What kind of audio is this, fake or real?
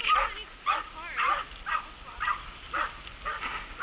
real